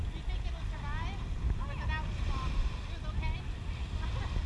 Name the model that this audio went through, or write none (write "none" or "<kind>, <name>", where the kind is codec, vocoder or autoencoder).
none